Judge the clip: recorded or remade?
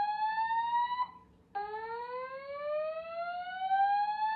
recorded